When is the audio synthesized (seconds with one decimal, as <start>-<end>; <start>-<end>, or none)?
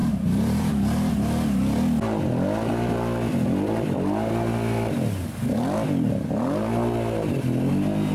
0.0-0.7